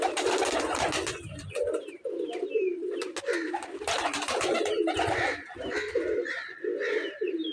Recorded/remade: recorded